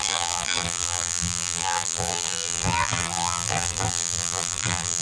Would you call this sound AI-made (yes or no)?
yes